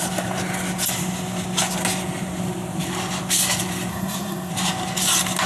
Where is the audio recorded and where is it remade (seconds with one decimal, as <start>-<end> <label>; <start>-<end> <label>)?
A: 0.0-3.9 recorded; 3.9-4.5 remade; 4.5-5.5 recorded